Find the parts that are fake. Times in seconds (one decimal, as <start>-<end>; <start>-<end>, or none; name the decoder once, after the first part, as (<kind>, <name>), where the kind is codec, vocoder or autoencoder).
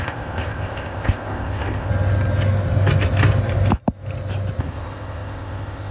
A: 0.0-1.9 (codec, ZipCodec); 4.6-5.9